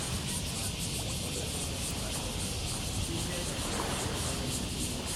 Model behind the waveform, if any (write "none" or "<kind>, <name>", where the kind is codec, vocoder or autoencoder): none